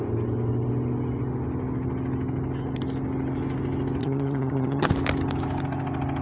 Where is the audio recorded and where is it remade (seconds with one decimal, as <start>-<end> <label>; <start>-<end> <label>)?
0.0-4.0 recorded; 4.0-4.9 remade; 4.9-6.2 recorded